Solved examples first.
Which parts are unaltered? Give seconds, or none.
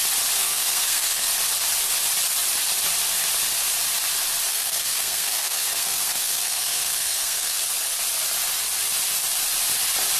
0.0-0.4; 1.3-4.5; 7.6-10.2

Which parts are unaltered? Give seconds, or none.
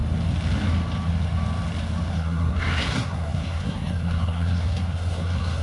0.0-2.1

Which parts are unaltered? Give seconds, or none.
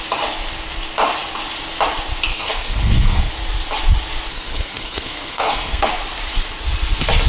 0.0-2.3; 3.3-4.3; 5.9-7.3